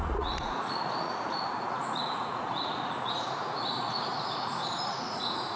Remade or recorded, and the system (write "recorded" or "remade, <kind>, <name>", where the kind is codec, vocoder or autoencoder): remade, vocoder, Vocos